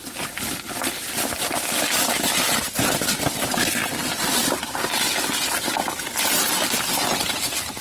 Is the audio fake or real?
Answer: real